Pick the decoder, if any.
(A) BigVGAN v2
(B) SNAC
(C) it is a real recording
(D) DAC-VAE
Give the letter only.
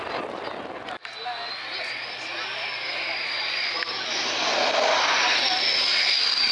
C